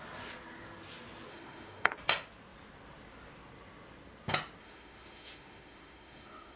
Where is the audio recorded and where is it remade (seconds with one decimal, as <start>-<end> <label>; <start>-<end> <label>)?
0.0-1.3 recorded; 1.3-1.9 remade; 1.9-4.6 recorded; 4.6-6.6 remade